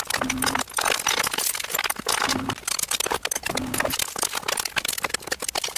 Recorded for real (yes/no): yes